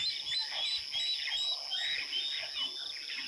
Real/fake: real